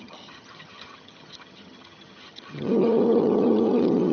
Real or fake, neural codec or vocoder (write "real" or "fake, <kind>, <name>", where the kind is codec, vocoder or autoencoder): fake, vocoder, HiFi-GAN